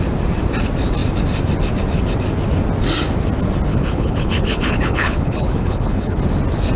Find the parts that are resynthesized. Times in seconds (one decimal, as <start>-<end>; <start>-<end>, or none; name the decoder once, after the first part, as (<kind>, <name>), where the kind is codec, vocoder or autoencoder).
3.7-6.2 (codec, HILCodec)